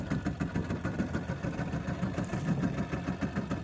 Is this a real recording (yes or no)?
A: yes